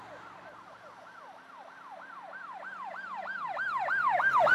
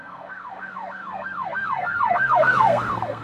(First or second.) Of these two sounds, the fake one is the second